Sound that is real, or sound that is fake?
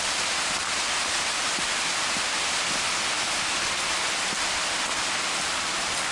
real